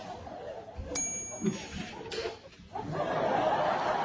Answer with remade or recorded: recorded